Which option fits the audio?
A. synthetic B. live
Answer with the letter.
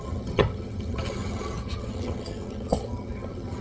A